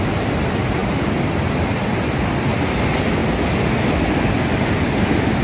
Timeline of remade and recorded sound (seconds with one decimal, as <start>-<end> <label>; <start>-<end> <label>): 0.0-5.4 recorded